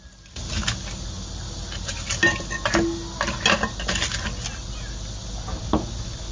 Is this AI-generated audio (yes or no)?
no